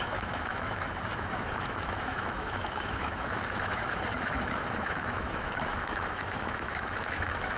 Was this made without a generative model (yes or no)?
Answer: no